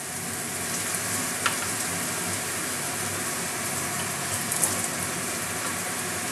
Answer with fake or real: real